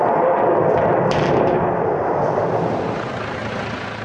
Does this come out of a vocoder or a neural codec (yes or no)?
no